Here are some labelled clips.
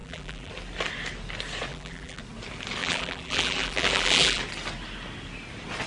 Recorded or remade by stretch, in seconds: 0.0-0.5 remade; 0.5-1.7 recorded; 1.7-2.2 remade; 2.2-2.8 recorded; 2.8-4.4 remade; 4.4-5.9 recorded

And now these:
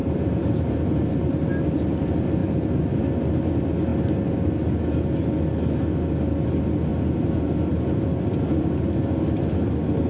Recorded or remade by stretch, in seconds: 0.0-1.2 remade; 1.2-10.1 recorded